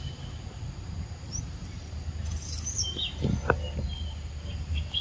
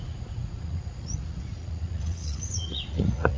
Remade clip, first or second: second